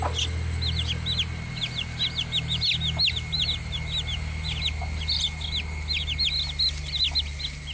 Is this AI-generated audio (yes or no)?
no